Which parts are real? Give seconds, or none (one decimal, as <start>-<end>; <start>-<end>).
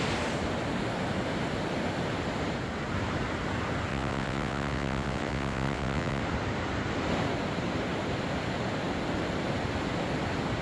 0.0-3.9; 6.2-10.6